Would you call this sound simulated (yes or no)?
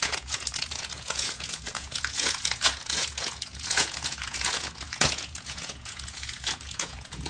yes